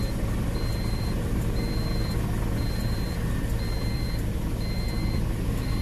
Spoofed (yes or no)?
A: yes